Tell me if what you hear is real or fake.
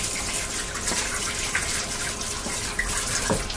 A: real